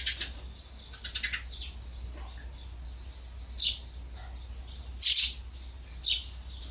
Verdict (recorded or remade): recorded